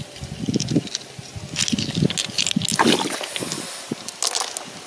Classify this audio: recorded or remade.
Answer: recorded